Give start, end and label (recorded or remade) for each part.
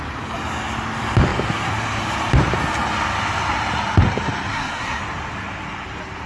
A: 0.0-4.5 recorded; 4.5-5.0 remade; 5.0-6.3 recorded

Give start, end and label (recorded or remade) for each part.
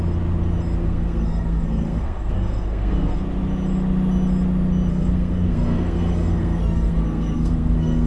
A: 0.0-0.8 recorded; 0.8-3.2 remade; 3.2-4.9 recorded; 4.9-8.1 remade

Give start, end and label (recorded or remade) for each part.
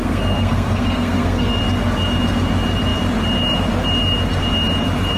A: 0.0-1.6 remade; 1.6-5.2 recorded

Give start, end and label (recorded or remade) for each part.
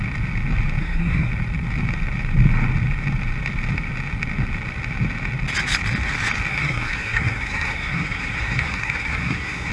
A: 0.0-0.8 recorded; 0.8-1.3 remade; 1.3-6.5 recorded; 6.5-9.7 remade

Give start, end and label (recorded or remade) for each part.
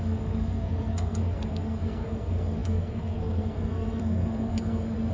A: 0.0-5.1 remade